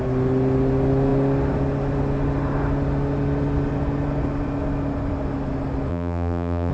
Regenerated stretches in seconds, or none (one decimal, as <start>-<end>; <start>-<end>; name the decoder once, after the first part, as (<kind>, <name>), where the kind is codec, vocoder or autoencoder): 5.9-6.7 (vocoder, BigVGAN v2)